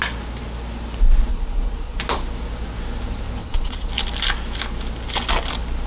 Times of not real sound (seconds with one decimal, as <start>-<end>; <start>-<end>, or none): 1.3-2.0; 3.4-3.9